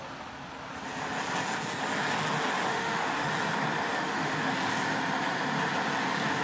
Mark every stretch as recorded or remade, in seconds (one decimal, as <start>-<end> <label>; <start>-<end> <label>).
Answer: 0.0-2.7 recorded; 2.7-3.3 remade; 3.3-3.9 recorded; 3.9-4.5 remade; 4.5-6.4 recorded